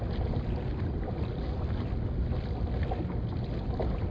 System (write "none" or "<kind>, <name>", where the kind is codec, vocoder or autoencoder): none